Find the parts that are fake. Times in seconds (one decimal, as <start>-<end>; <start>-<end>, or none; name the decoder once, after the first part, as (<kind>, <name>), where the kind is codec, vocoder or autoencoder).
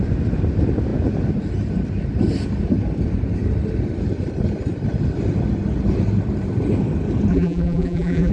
7.3-8.3 (vocoder, BigVGAN v2)